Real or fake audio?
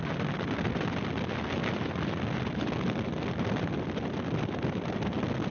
real